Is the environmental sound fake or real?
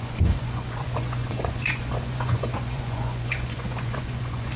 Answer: fake